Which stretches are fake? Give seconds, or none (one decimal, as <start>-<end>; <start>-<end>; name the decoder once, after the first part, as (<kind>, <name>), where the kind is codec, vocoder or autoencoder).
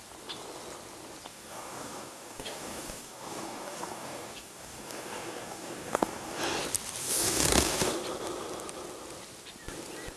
1.3-6.4 (codec, DAC); 7.0-7.9